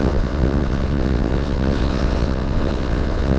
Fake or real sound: fake